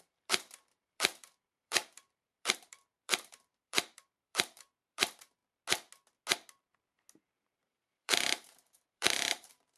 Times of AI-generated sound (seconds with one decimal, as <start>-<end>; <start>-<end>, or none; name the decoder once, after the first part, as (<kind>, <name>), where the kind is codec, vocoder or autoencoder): 0.0-5.4 (vocoder, BigVGAN v2); 7.7-9.8